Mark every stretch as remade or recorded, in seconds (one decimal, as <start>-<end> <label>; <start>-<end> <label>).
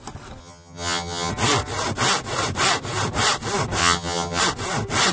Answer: 0.0-0.4 recorded; 0.4-1.3 remade; 1.3-3.8 recorded; 3.8-4.4 remade; 4.4-5.1 recorded